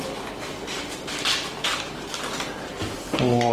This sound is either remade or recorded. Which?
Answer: remade